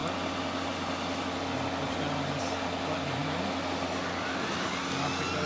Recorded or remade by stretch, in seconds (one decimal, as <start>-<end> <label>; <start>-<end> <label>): 0.0-5.5 recorded